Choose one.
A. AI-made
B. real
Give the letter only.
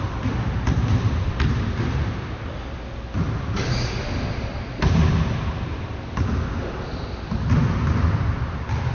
B